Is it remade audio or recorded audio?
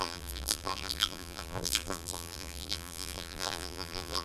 remade